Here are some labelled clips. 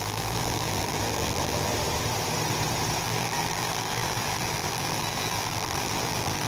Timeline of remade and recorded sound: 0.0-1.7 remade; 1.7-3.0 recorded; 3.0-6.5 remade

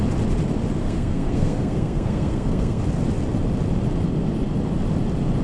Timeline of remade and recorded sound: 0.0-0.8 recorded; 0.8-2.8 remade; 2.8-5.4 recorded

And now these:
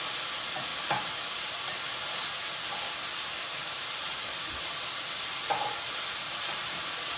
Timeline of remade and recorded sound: 0.0-0.7 recorded; 0.7-2.5 remade; 2.5-3.6 recorded; 3.6-4.3 remade; 4.3-6.2 recorded; 6.2-6.8 remade; 6.8-7.2 recorded

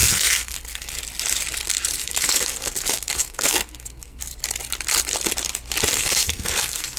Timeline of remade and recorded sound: 0.0-0.9 remade; 0.9-2.0 recorded; 2.0-4.2 remade; 4.2-5.9 recorded; 5.9-7.0 remade

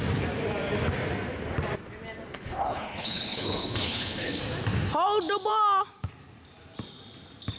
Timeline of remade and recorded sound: 0.0-2.3 recorded; 2.3-4.4 remade; 4.4-7.6 recorded

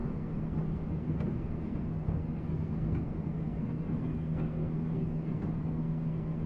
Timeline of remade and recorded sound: 0.0-6.5 remade